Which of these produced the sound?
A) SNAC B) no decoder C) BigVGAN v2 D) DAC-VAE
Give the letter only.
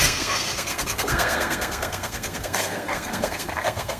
A